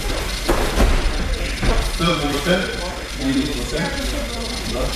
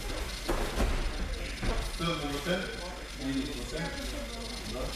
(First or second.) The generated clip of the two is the first